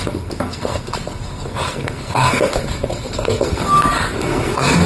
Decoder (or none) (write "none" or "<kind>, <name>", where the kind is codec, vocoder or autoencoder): codec, SNAC